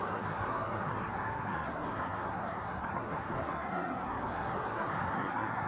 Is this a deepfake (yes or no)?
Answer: yes